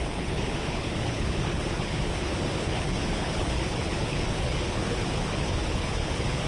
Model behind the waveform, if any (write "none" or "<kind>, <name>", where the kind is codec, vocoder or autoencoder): codec, HILCodec